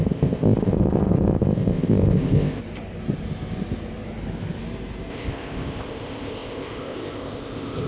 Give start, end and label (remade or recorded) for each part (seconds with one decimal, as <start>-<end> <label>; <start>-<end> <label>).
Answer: 0.0-2.6 remade; 2.6-5.1 recorded; 5.1-7.9 remade